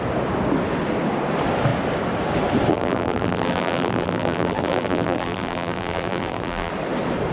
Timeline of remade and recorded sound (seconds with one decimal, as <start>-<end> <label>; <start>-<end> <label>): 0.0-2.7 recorded; 2.7-6.7 remade; 6.7-7.3 recorded